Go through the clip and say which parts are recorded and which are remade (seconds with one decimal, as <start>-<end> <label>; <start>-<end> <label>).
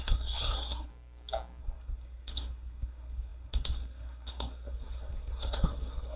0.0-0.9 remade; 0.9-1.6 recorded; 1.6-6.2 remade